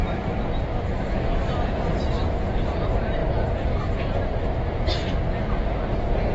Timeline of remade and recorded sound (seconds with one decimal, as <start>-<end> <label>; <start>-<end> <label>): 0.0-1.8 recorded; 1.8-3.2 remade; 3.2-6.3 recorded